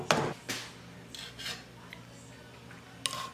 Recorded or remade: recorded